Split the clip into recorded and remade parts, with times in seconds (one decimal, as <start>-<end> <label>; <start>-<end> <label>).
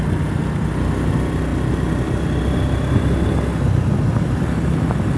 0.0-5.2 recorded